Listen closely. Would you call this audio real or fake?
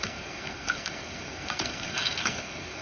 fake